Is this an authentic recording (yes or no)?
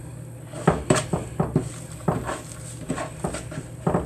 no